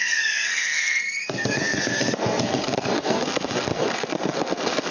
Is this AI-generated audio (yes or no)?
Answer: yes